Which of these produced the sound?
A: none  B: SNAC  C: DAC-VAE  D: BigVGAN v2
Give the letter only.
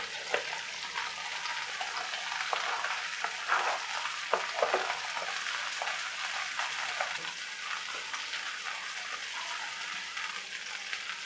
A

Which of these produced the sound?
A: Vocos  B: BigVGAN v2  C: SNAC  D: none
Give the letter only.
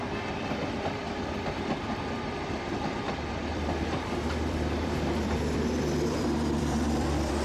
B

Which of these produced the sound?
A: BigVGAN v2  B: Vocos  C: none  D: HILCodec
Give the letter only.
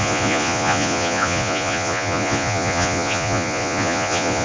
B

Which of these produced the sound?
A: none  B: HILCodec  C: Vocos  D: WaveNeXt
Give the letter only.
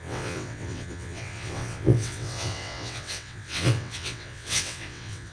D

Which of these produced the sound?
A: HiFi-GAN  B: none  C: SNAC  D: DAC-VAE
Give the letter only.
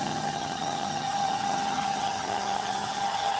A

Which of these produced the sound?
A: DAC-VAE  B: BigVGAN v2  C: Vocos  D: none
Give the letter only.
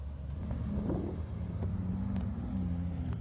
D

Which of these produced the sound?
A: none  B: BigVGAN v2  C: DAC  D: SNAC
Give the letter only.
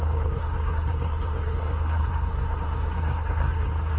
D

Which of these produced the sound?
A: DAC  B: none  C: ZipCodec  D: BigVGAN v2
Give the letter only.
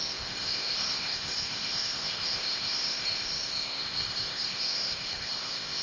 C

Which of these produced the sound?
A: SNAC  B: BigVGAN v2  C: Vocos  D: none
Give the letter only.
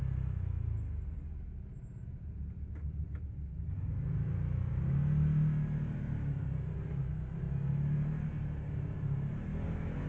D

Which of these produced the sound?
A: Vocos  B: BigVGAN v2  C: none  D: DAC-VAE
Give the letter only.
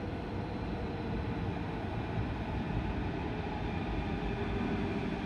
C